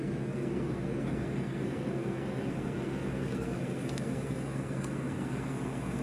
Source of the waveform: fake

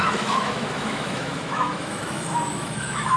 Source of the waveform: fake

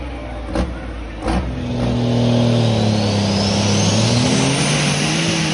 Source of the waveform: real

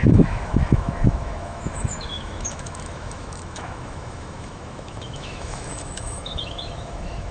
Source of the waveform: fake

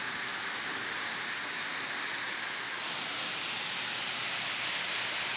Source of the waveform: real